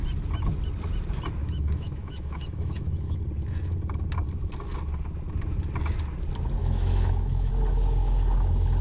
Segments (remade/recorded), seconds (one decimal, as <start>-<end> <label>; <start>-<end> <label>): 0.0-1.4 recorded; 1.4-3.2 remade; 3.2-6.6 recorded; 6.6-7.5 remade; 7.5-8.8 recorded